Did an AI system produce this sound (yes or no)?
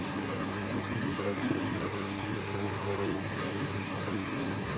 yes